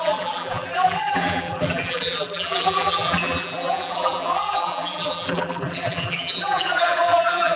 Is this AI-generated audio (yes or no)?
yes